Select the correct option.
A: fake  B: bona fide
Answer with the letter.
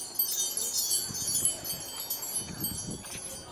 B